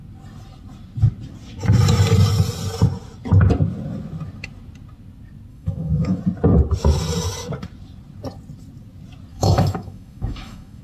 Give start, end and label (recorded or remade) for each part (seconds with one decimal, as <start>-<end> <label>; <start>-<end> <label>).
0.0-5.5 recorded; 5.5-6.2 remade; 6.2-9.3 recorded; 9.3-10.8 remade